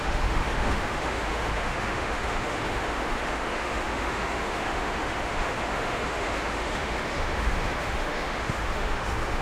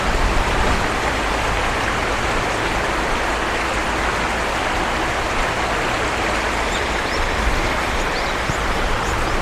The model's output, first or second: first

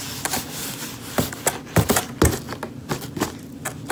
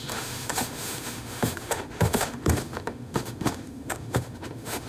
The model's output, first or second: second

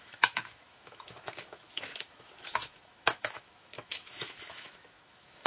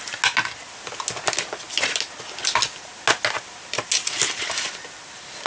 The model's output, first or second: first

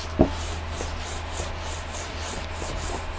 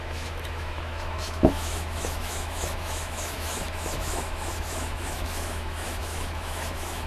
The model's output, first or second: second